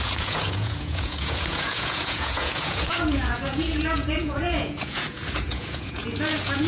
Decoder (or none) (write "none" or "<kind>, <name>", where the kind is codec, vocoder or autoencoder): vocoder, Vocos